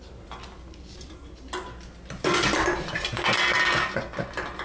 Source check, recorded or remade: recorded